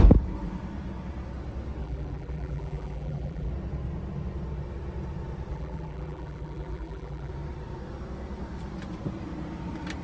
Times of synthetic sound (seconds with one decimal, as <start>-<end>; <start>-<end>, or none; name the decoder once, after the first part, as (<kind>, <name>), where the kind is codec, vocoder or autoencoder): 1.8-3.5 (vocoder, BigVGAN v2); 5.5-7.3